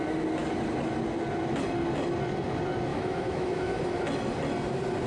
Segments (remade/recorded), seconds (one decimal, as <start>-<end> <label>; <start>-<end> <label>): 0.0-2.9 recorded; 2.9-3.8 remade; 3.8-5.1 recorded